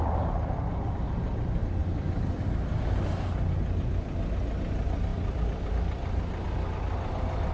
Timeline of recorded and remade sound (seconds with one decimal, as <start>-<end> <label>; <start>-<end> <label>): 0.0-1.8 recorded; 1.8-2.8 remade; 2.8-5.1 recorded; 5.1-5.7 remade; 5.7-7.5 recorded